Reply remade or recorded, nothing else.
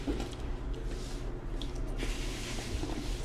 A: recorded